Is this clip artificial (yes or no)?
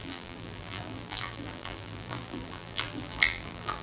yes